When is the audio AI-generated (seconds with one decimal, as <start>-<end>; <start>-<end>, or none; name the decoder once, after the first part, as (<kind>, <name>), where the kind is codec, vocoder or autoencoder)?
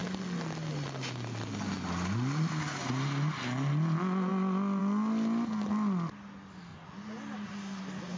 none